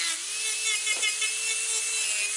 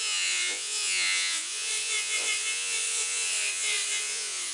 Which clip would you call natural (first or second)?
first